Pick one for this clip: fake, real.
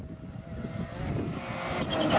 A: real